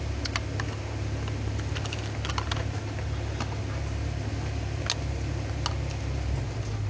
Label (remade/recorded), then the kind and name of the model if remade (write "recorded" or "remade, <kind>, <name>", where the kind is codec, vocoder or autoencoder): recorded